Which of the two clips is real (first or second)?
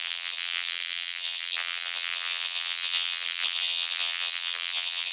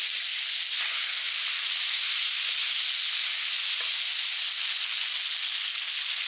second